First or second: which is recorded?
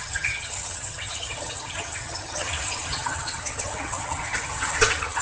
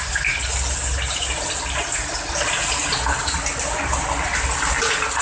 second